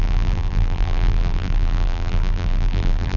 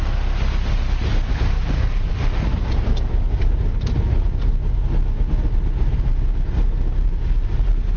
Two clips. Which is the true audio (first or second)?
second